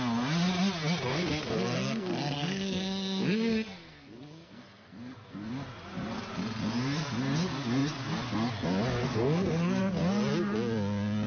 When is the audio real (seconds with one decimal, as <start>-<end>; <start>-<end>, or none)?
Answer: 0.0-1.1; 5.5-9.0; 9.8-11.3